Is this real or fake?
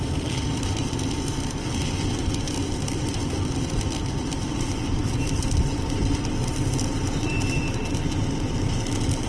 real